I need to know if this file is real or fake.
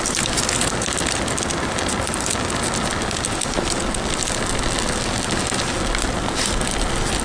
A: real